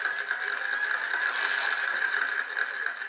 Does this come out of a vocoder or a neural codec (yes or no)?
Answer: no